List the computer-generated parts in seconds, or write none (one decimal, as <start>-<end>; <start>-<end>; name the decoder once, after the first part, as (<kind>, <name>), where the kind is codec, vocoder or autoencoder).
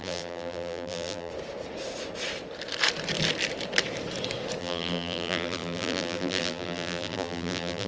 0.0-1.3 (vocoder, BigVGAN v2); 4.6-7.9